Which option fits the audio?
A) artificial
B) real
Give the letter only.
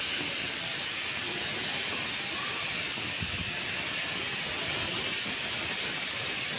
B